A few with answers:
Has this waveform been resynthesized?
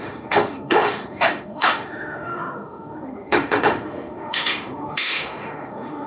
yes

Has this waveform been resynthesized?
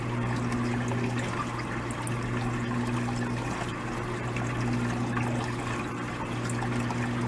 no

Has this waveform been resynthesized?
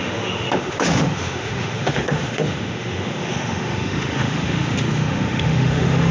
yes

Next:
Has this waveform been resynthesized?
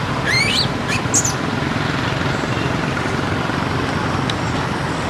no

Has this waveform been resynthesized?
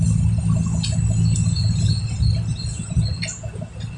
no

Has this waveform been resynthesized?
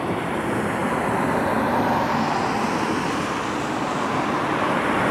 no